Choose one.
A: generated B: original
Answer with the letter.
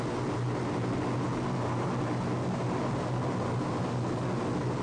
B